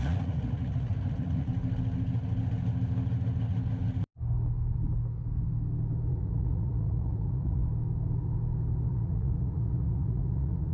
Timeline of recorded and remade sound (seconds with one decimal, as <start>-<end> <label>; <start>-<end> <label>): 0.0-1.5 remade; 1.5-6.1 recorded; 6.1-7.6 remade; 7.6-8.9 recorded; 8.9-10.7 remade